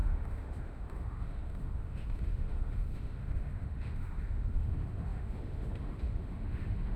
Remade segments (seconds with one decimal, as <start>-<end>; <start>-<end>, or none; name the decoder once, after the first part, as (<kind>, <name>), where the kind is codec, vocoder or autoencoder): 0.0-7.0 (autoencoder, DAC-VAE)